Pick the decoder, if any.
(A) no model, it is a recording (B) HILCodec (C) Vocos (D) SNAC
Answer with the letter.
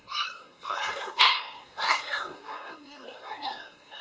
D